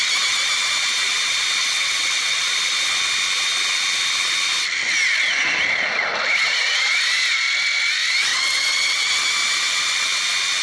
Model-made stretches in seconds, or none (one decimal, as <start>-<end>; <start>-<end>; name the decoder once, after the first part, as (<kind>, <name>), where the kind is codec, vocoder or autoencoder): 1.6-2.4 (vocoder, WaveNeXt); 8.3-9.1